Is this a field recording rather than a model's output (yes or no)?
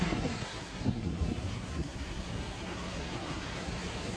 no